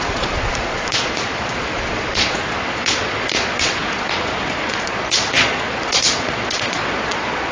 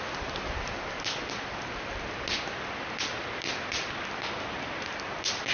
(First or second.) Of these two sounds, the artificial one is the first